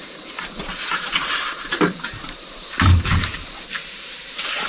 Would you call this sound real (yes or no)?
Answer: no